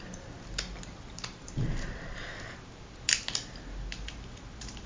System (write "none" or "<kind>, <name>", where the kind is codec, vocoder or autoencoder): none